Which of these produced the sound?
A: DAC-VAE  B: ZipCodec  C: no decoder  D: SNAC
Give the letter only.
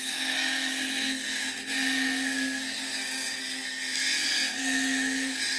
D